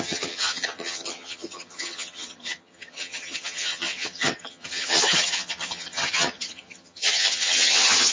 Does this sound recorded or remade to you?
remade